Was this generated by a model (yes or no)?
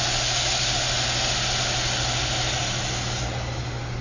no